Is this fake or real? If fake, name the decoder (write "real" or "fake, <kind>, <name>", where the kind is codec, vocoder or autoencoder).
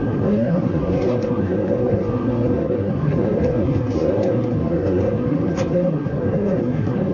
fake, codec, SNAC